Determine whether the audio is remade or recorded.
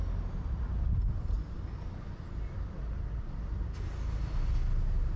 recorded